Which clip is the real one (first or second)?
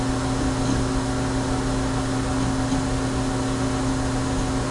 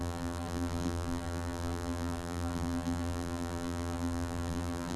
first